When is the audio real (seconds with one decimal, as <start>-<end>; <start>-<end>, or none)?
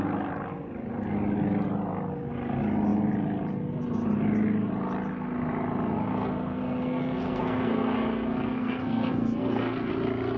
0.0-6.1; 9.9-10.4